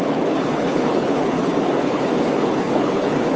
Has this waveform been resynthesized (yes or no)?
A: yes